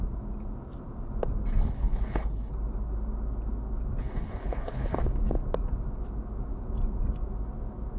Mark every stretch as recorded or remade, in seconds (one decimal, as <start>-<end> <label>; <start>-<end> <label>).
0.0-1.6 recorded; 1.6-2.5 remade; 2.5-4.0 recorded; 4.0-5.0 remade; 5.0-8.0 recorded